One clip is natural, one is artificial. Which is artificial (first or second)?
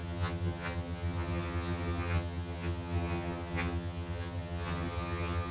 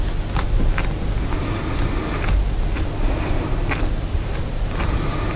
first